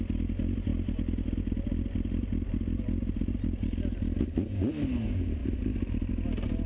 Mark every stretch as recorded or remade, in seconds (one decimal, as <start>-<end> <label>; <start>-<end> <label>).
0.0-6.7 recorded